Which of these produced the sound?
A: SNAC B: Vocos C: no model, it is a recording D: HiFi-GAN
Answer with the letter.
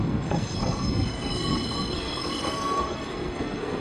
A